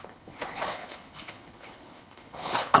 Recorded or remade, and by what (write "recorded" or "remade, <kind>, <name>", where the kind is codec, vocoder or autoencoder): remade, codec, HILCodec